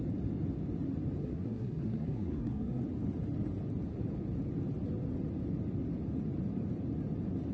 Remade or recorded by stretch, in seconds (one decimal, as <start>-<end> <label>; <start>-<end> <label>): 0.0-1.2 recorded; 1.2-2.8 remade; 2.8-7.5 recorded